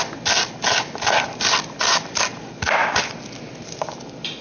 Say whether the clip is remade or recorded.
recorded